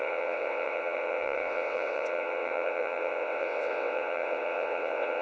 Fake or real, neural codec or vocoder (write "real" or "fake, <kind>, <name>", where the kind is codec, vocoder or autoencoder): fake, vocoder, WaveNeXt